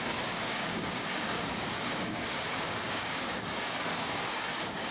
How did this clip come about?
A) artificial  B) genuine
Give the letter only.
A